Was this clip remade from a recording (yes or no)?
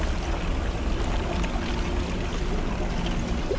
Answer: no